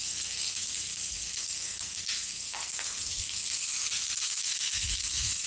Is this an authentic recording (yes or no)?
no